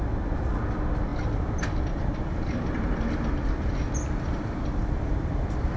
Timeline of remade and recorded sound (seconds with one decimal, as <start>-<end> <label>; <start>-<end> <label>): 0.0-5.8 recorded